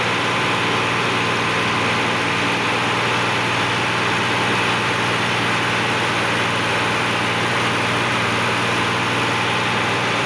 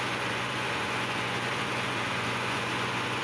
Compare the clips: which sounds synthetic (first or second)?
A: second